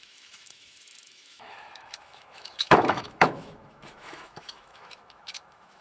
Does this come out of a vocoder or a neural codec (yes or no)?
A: yes